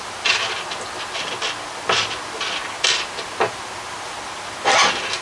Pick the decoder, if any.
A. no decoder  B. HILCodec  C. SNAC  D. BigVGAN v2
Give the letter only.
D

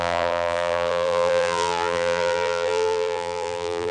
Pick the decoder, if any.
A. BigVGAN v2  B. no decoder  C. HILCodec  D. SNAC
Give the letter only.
A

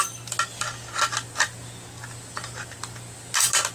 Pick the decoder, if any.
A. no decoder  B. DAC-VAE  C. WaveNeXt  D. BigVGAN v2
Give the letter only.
A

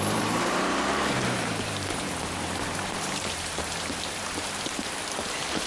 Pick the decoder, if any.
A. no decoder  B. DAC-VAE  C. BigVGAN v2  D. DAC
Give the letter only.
C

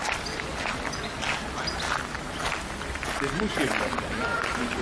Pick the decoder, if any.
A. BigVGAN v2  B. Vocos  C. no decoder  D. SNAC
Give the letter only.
C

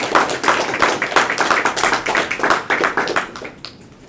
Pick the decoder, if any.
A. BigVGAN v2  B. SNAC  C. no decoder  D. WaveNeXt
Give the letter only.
C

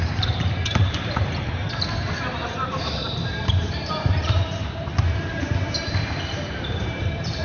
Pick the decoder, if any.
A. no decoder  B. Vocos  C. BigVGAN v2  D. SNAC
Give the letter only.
C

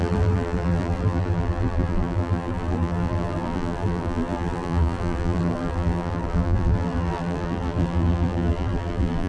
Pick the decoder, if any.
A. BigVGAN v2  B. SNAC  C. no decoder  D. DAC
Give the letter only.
A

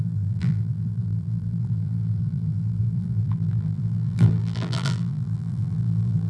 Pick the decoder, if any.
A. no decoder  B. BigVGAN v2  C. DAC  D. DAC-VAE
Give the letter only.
B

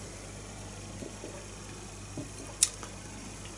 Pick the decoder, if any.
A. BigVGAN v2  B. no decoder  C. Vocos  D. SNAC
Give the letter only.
B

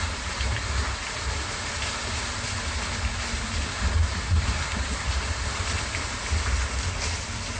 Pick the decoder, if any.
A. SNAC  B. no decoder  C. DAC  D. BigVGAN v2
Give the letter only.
B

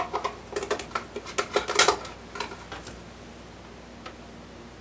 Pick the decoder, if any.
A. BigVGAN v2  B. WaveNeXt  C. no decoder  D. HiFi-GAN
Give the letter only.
C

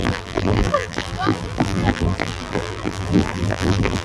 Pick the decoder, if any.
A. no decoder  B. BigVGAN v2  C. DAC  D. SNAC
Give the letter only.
B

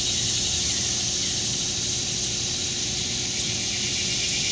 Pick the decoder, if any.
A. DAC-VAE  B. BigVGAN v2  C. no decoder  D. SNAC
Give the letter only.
C